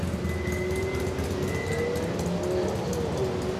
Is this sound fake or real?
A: real